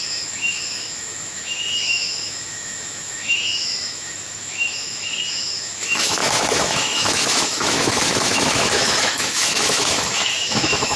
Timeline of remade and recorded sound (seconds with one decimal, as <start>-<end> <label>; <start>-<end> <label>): 0.0-11.0 remade